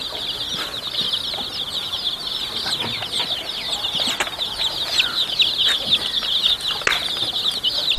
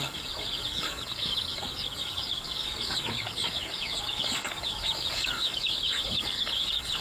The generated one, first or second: second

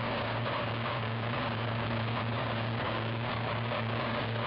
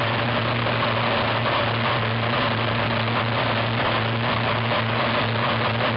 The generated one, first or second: first